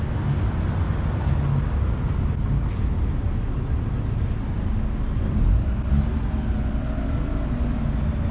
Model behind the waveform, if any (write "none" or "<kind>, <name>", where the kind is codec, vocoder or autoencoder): none